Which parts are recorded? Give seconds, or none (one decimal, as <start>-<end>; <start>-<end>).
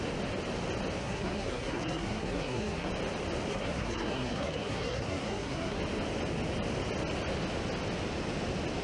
0.0-1.0; 2.9-3.5; 5.8-8.8